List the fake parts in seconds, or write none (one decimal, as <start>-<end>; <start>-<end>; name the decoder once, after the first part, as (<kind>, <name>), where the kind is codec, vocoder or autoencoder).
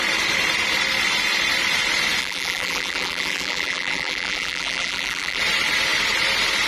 2.2-5.4 (vocoder, BigVGAN v2)